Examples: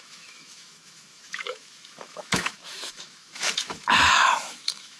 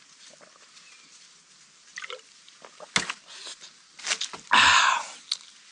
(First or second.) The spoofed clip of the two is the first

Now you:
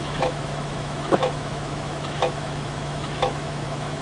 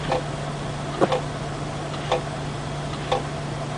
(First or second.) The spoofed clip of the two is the first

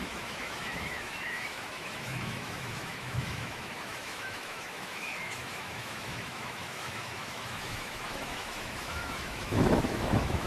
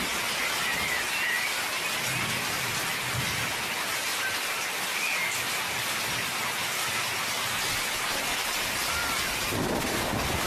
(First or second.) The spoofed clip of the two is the first